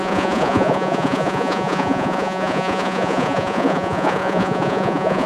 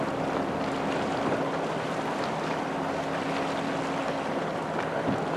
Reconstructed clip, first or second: first